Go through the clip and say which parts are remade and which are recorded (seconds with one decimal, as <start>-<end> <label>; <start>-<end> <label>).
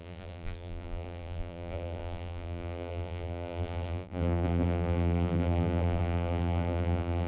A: 0.0-7.3 remade